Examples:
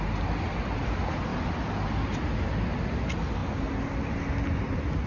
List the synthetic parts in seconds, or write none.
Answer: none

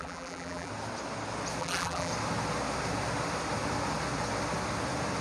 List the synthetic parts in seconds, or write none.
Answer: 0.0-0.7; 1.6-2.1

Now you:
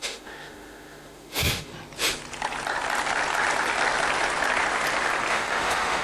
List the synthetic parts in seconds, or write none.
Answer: 0.0-1.7; 5.3-6.0

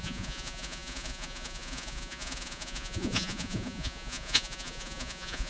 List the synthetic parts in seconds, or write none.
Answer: 0.0-5.5